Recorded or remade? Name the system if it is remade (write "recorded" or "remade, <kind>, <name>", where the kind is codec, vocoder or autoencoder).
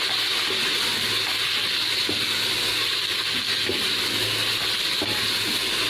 recorded